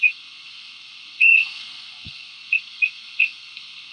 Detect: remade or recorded remade